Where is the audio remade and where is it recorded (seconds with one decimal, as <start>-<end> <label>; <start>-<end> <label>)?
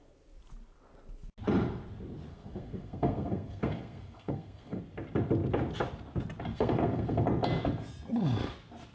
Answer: 0.0-2.3 recorded; 2.3-4.8 remade; 4.8-6.5 recorded; 6.5-7.2 remade; 7.2-8.9 recorded